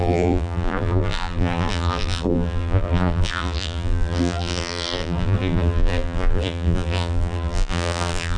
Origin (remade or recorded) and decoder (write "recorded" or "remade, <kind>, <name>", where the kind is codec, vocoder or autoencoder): remade, vocoder, BigVGAN v2